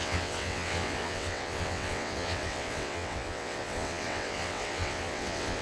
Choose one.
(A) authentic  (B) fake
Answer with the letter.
B